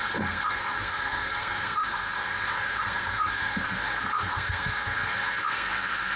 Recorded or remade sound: remade